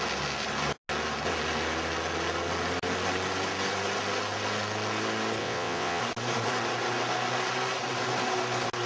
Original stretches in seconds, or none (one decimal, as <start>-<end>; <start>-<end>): 0.0-5.4; 6.0-8.9